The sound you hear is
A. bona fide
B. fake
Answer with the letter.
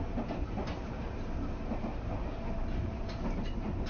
A